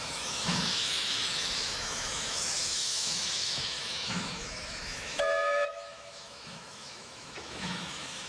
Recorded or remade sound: remade